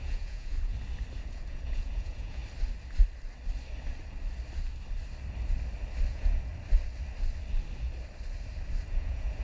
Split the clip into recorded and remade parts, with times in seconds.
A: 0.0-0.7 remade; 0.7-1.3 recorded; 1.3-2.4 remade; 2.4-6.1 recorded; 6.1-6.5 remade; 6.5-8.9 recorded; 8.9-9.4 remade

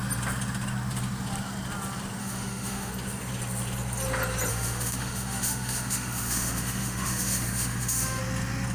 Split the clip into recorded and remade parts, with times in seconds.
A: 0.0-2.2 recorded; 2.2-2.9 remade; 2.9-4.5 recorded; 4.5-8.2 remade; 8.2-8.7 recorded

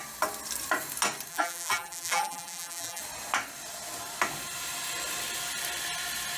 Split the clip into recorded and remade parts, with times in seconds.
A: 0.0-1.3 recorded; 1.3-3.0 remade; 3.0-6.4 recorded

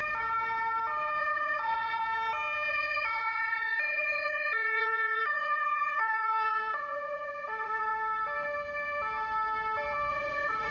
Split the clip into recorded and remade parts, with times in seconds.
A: 0.0-1.2 recorded; 1.2-2.0 remade; 2.0-2.7 recorded; 2.7-7.9 remade; 7.9-10.1 recorded; 10.1-10.7 remade

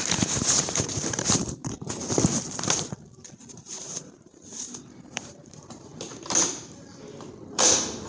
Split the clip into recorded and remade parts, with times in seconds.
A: 0.0-1.6 remade; 1.6-3.5 recorded; 3.5-5.9 remade; 5.9-7.5 recorded; 7.5-8.1 remade